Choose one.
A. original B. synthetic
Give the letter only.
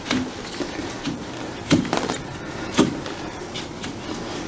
B